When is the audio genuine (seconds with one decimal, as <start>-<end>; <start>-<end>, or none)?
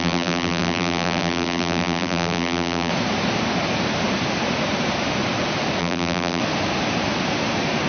2.9-5.8; 6.4-7.9